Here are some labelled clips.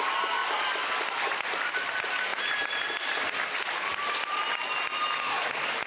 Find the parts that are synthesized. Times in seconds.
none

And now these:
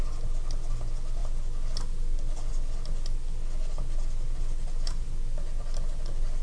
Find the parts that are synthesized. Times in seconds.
none

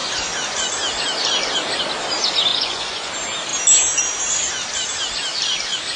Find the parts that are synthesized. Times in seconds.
2.5-3.1 (vocoder, Vocos)

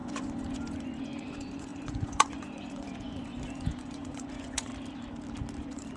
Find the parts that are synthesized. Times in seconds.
0.0-4.7 (vocoder, Vocos); 5.6-6.0

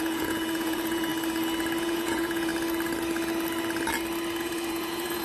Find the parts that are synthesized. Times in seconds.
0.0-1.1 (vocoder, Vocos); 1.8-2.5; 4.4-5.2

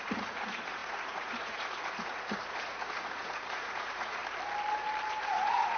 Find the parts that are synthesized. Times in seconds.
0.0-4.2 (vocoder, Vocos); 5.2-5.8